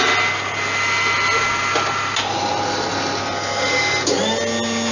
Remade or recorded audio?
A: recorded